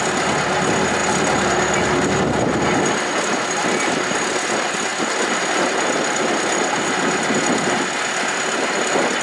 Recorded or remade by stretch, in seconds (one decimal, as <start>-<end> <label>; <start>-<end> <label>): 0.0-9.2 recorded